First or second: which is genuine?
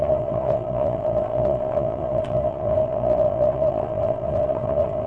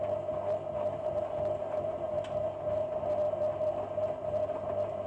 second